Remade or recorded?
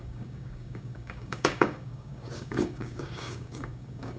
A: remade